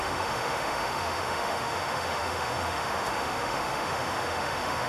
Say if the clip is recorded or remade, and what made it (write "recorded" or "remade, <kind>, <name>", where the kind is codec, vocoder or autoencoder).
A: remade, autoencoder, DAC-VAE